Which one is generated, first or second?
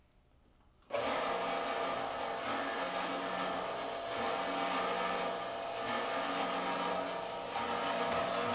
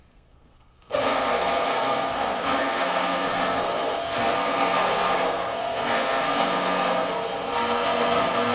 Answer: second